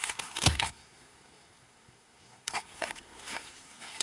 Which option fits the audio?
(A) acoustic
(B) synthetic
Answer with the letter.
B